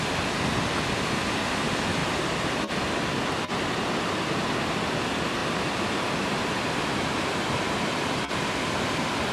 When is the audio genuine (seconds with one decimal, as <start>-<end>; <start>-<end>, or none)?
0.0-2.0; 2.5-9.3